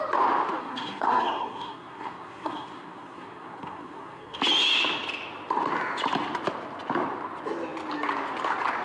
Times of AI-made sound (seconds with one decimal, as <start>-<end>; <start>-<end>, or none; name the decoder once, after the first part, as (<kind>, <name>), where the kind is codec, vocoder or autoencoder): 0.6-4.4 (codec, SNAC)